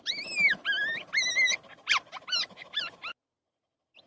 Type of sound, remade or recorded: recorded